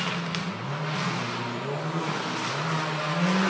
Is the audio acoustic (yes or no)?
yes